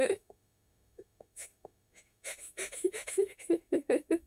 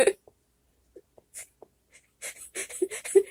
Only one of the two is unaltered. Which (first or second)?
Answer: second